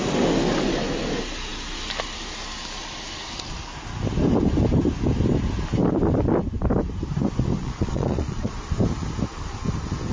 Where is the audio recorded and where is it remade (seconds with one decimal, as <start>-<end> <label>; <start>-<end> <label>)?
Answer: 0.0-7.6 recorded; 7.6-8.6 remade; 8.6-10.1 recorded